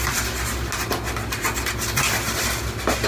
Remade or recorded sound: recorded